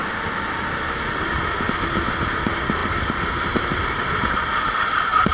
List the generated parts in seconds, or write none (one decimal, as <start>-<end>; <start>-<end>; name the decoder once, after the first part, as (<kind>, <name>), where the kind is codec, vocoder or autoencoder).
none